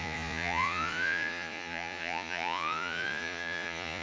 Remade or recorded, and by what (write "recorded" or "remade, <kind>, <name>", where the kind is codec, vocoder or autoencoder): remade, vocoder, Vocos